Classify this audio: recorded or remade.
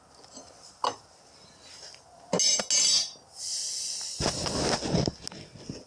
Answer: recorded